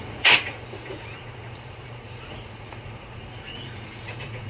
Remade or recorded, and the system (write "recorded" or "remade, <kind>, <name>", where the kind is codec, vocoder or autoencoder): remade, vocoder, Vocos